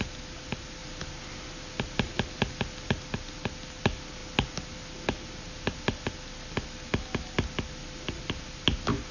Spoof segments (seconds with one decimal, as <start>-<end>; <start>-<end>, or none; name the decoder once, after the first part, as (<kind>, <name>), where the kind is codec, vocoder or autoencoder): none